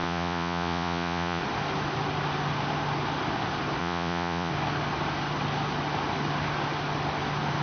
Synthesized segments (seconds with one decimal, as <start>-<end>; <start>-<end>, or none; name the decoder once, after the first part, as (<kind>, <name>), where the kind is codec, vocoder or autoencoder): 0.0-1.4 (vocoder, Vocos); 3.8-4.5